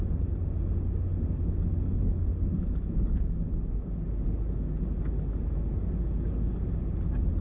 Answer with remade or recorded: recorded